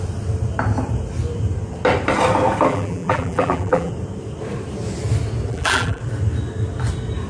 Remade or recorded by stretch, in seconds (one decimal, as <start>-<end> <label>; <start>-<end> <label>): 0.0-2.7 recorded; 2.7-3.9 remade; 3.9-5.5 recorded; 5.5-6.0 remade; 6.0-7.3 recorded